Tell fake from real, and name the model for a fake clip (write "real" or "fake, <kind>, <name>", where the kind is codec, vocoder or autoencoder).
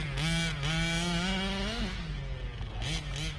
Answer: real